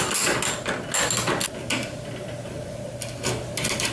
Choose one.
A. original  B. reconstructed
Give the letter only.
A